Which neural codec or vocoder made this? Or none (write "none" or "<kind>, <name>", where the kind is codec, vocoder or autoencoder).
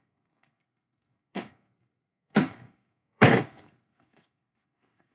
codec, SNAC